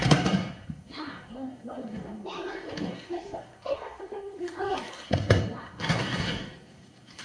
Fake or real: fake